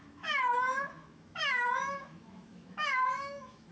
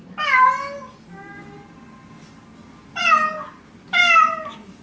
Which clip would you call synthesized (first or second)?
first